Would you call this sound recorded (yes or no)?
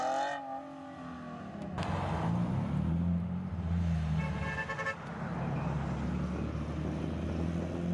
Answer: yes